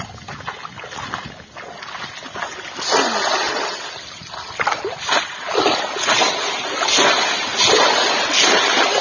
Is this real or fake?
real